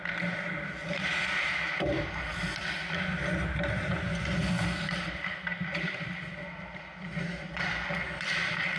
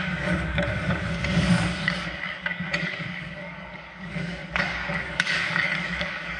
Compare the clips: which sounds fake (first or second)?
second